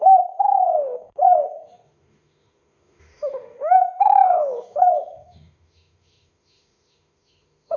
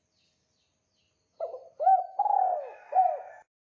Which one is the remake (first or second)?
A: first